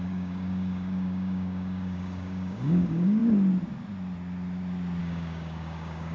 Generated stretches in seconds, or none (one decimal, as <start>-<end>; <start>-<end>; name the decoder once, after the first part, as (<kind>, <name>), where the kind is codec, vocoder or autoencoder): 0.0-3.2 (codec, DAC); 5.0-6.1